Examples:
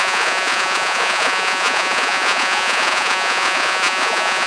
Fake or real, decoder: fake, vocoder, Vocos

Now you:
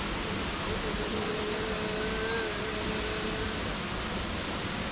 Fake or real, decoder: real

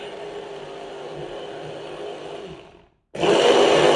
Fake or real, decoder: real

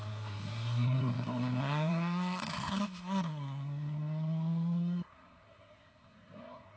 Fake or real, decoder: fake, codec, SNAC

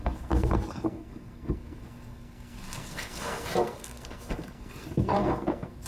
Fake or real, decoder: fake, codec, SNAC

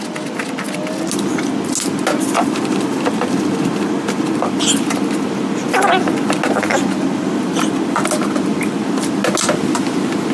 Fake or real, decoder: real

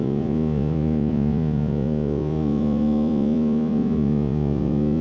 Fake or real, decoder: fake, vocoder, Vocos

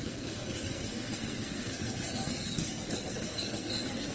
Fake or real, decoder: fake, codec, SNAC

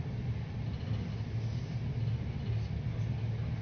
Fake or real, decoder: real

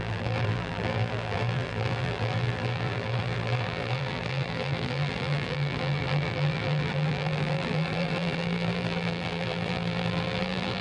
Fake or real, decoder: fake, vocoder, BigVGAN v2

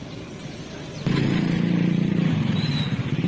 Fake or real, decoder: fake, vocoder, BigVGAN v2